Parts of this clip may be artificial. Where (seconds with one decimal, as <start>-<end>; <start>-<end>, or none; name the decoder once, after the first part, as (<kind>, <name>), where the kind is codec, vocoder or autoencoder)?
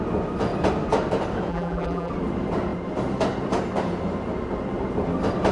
1.5-2.1 (vocoder, BigVGAN v2)